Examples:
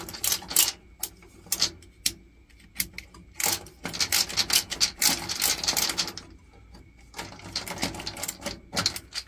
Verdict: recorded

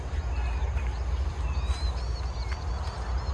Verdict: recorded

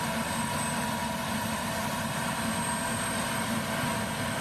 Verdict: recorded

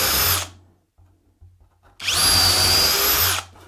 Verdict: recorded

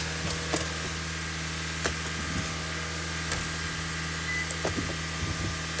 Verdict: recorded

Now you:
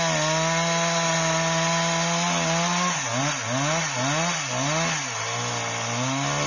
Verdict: recorded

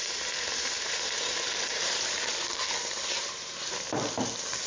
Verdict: remade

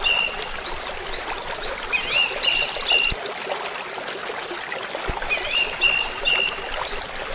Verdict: recorded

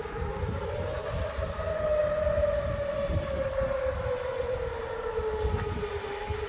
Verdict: recorded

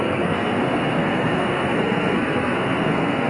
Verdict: remade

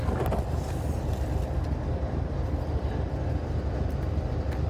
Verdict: recorded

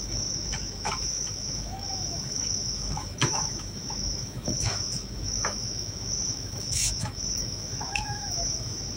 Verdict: remade